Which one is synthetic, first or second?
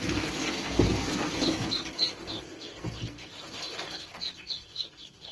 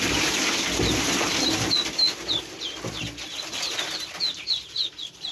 first